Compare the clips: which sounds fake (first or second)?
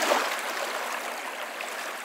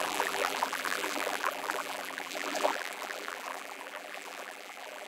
second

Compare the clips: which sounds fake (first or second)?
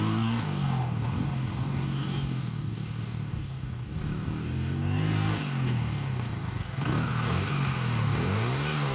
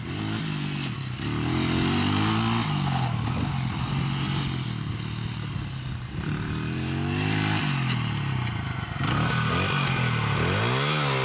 first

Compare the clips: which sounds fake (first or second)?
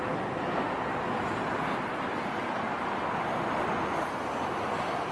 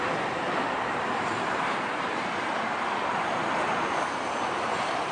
second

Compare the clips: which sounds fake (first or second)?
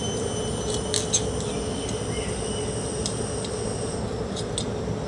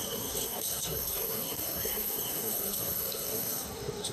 second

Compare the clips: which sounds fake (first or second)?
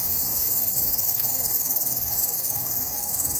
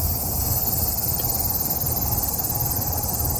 first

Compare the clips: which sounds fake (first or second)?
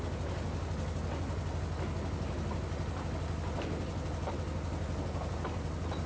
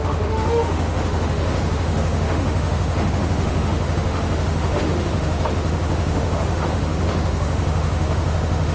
second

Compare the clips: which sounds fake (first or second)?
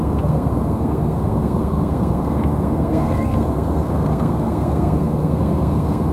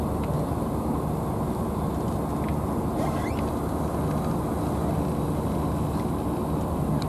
first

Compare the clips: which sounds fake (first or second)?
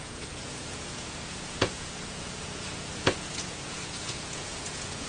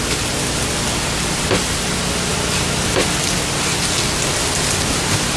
first